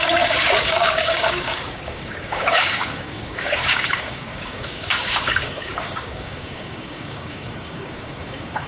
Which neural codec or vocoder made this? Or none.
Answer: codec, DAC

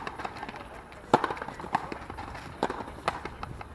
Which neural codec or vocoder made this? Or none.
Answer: none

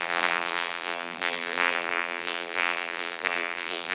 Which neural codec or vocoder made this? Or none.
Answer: vocoder, BigVGAN v2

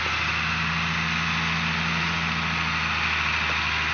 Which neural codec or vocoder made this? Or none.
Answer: none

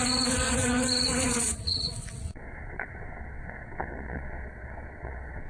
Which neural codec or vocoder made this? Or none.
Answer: vocoder, WaveNeXt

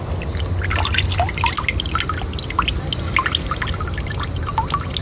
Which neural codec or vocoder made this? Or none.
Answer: none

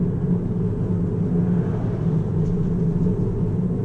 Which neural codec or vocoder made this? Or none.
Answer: none